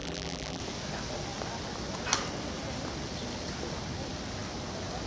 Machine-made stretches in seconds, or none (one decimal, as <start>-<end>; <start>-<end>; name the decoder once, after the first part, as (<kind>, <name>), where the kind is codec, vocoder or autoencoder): 0.0-0.6 (vocoder, BigVGAN v2)

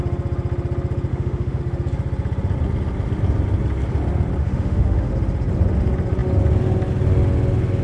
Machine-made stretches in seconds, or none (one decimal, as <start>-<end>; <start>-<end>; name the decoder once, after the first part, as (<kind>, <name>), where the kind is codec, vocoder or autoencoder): 1.1-1.6 (autoencoder, DAC-VAE); 4.4-5.1

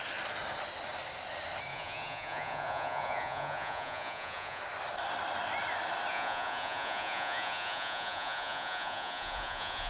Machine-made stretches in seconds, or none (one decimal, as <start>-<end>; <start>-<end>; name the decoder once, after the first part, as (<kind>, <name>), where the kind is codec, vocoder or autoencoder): 1.7-4.6 (vocoder, Vocos); 6.1-9.9

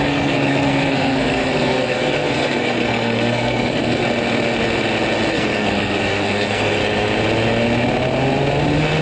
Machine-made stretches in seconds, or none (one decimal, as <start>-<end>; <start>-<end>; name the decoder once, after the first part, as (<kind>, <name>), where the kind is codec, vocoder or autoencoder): 0.0-4.0 (codec, SNAC); 5.3-6.8

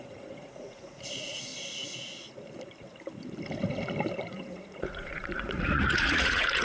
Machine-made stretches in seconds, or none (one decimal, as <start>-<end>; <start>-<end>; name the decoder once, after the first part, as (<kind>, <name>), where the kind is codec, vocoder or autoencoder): 0.0-1.5 (vocoder, Vocos); 4.3-6.6

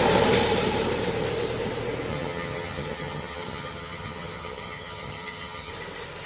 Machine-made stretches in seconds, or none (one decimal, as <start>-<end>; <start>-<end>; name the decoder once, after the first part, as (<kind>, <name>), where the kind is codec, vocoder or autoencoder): 2.1-5.7 (vocoder, HiFi-GAN)

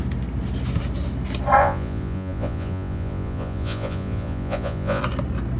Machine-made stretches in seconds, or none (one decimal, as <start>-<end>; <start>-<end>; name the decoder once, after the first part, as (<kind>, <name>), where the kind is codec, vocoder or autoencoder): 1.6-5.0 (vocoder, Vocos)

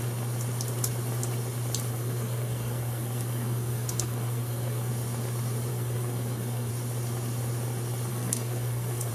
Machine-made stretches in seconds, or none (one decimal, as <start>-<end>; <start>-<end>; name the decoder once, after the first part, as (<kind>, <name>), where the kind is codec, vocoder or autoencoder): 1.9-4.9 (codec, SNAC); 5.7-6.7; 8.1-9.1